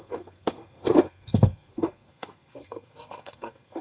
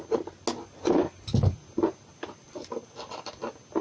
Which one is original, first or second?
second